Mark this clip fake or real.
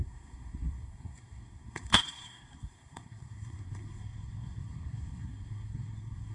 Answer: fake